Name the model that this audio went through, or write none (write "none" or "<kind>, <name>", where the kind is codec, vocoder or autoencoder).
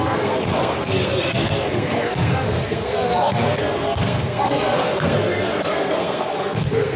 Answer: codec, SNAC